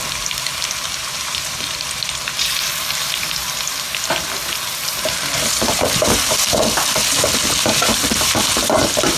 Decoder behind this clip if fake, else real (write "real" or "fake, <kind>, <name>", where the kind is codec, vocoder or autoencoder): fake, vocoder, BigVGAN v2